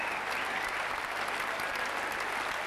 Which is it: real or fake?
real